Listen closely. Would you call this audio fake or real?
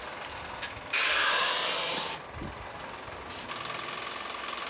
real